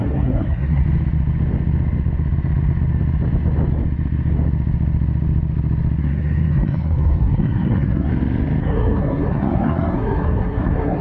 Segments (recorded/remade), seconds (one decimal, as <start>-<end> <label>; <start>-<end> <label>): 0.0-0.8 remade; 0.8-6.0 recorded; 6.0-8.1 remade; 8.1-8.6 recorded; 8.6-11.0 remade